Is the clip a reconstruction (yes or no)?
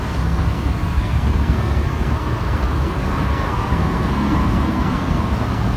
yes